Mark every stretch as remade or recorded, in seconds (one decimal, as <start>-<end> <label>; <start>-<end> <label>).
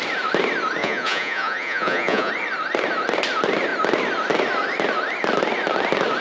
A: 0.0-0.8 recorded; 0.8-2.3 remade; 2.3-6.2 recorded